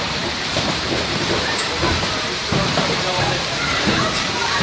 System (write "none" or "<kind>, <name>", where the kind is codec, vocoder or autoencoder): vocoder, BigVGAN v2